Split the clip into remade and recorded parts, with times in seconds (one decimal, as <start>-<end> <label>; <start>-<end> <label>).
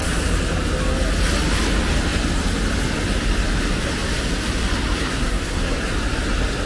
0.0-5.1 recorded; 5.1-5.8 remade; 5.8-6.7 recorded